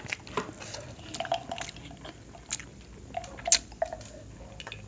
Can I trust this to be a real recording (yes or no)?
yes